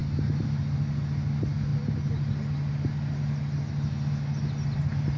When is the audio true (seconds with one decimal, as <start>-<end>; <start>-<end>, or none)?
0.0-5.2